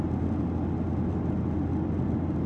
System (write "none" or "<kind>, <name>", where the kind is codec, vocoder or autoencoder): none